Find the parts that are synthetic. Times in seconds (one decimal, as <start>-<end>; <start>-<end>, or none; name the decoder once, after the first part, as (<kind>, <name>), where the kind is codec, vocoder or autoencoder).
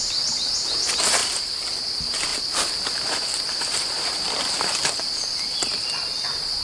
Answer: 1.2-1.7 (vocoder, BigVGAN v2); 2.3-6.6